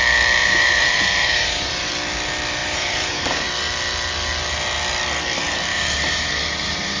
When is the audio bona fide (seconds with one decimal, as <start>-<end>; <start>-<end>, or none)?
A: 0.0-0.4; 1.9-2.6; 3.5-5.7